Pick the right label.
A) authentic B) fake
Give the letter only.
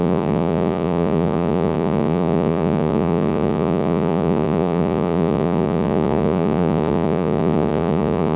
B